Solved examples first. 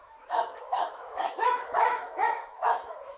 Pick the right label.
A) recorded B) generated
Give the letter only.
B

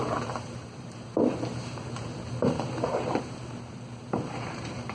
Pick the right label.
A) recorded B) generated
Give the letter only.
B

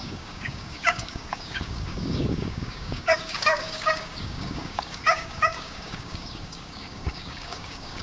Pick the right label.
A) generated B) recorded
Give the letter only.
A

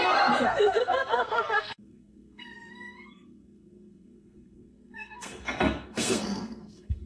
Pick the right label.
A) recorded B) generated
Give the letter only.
B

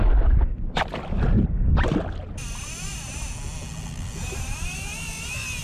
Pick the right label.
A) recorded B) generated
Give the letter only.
A